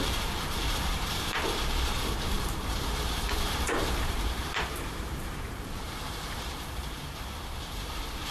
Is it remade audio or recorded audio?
remade